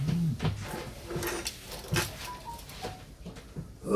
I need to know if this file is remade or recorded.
recorded